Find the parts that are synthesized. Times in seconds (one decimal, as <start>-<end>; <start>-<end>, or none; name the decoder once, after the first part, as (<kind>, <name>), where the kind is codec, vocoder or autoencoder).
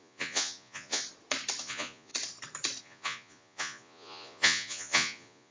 0.0-1.0 (vocoder, Vocos); 1.6-2.1; 2.8-5.5